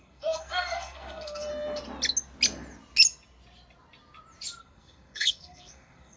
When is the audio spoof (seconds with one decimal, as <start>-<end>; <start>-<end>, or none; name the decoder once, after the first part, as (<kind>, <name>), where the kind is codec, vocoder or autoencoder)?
0.0-1.5 (codec, SNAC); 4.6-6.2